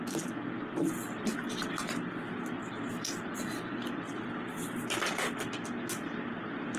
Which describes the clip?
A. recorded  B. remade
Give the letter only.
A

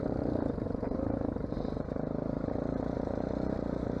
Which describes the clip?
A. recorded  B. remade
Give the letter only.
A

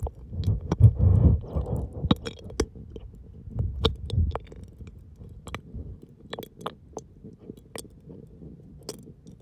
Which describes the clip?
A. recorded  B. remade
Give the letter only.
A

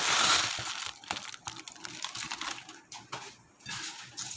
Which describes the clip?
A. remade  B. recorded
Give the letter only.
B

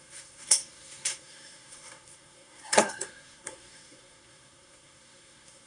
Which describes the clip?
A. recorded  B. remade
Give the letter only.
B